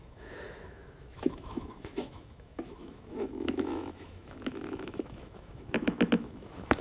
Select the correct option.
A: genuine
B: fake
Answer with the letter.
B